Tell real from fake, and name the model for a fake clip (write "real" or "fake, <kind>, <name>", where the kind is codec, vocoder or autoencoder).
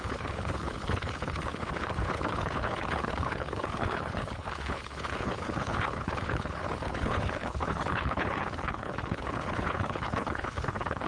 fake, codec, HILCodec